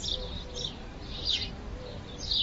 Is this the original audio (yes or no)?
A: yes